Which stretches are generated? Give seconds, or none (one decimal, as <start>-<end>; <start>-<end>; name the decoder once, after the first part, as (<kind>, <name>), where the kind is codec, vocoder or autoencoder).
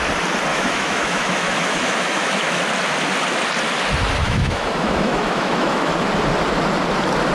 0.5-2.6 (autoencoder, DAC-VAE); 4.2-5.9